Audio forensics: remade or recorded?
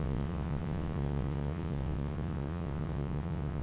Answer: remade